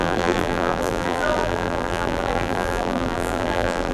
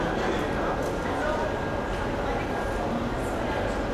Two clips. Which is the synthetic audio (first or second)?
first